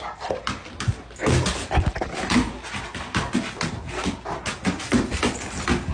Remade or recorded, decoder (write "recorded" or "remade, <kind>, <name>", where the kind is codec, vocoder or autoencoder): recorded